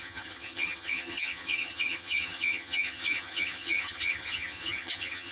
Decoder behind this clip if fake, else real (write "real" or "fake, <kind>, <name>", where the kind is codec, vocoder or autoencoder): fake, vocoder, HiFi-GAN